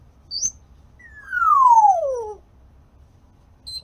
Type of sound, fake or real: real